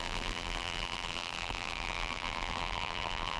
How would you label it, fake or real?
fake